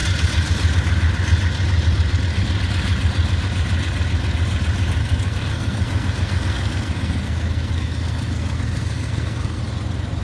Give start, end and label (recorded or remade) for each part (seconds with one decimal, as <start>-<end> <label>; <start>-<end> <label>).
0.0-5.0 recorded; 5.0-9.6 remade; 9.6-10.2 recorded